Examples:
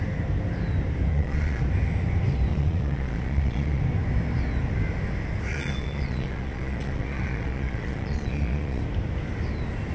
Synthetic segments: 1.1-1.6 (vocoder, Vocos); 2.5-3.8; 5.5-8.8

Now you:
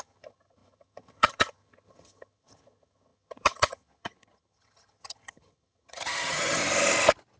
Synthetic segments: 0.0-6.6 (vocoder, HiFi-GAN)

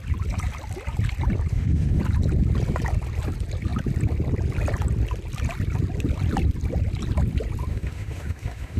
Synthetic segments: 1.5-2.0 (autoencoder, DAC-VAE); 7.7-8.8